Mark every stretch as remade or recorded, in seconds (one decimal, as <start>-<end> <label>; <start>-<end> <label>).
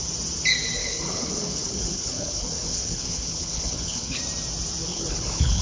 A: 0.0-0.8 recorded; 0.8-4.2 remade; 4.2-4.9 recorded; 4.9-5.6 remade